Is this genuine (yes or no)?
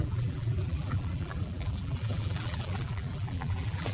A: no